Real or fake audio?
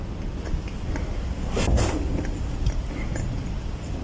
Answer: real